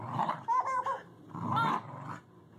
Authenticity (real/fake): real